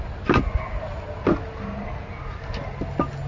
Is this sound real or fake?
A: real